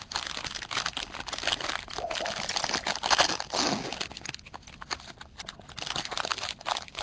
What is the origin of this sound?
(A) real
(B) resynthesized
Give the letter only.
A